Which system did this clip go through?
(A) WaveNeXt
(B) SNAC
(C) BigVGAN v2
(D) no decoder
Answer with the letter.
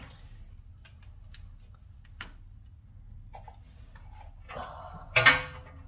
D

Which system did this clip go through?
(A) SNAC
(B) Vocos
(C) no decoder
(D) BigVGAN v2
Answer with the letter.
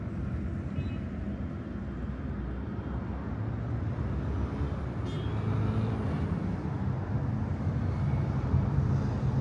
C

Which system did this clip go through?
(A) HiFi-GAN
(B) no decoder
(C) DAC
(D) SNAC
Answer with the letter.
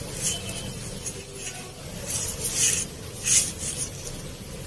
B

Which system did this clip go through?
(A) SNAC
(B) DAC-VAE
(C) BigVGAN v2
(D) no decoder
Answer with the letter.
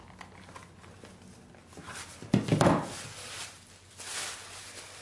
D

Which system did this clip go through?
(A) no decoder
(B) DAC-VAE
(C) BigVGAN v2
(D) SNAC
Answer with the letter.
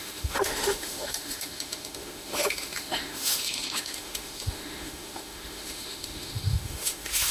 B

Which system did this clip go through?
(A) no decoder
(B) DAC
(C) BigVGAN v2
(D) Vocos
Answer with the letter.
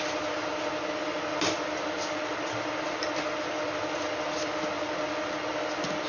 A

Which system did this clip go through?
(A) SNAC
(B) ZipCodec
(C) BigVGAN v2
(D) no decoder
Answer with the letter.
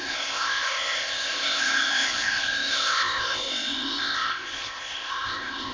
B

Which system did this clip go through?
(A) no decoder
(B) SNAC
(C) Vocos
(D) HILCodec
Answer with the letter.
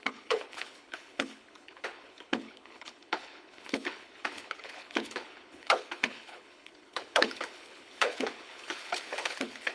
D